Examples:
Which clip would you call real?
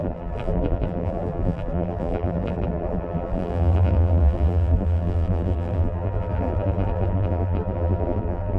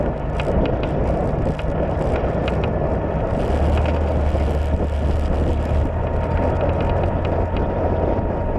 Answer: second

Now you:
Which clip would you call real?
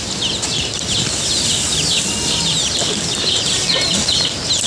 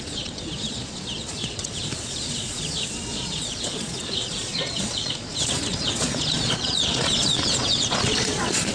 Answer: first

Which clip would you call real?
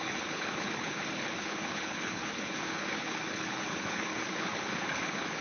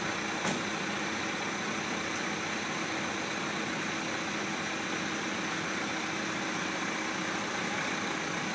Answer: second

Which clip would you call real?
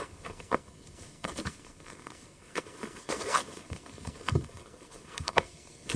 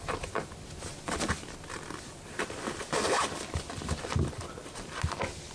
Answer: second